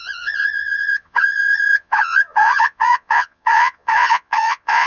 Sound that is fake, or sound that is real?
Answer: fake